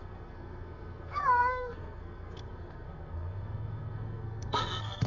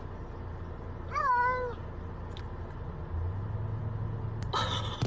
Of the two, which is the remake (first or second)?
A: first